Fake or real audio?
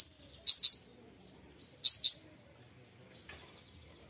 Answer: real